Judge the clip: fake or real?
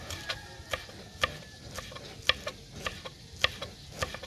real